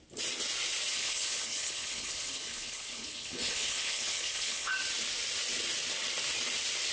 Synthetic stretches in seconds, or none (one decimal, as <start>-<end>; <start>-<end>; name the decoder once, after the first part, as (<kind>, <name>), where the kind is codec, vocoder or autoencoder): 0.9-4.7 (codec, HILCodec)